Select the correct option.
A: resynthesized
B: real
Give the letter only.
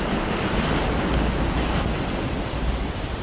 B